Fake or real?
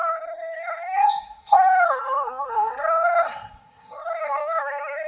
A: fake